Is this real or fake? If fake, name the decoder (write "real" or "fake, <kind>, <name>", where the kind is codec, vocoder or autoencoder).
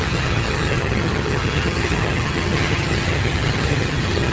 fake, vocoder, HiFi-GAN